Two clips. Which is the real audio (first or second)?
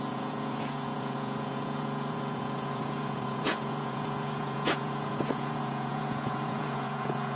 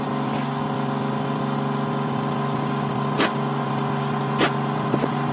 second